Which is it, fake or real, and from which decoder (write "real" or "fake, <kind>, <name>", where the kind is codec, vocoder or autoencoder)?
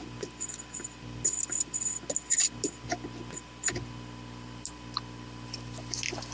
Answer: real